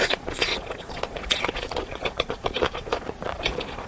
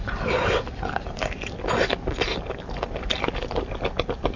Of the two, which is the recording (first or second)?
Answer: second